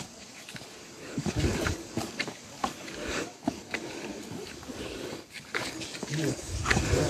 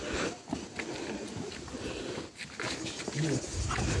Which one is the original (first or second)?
second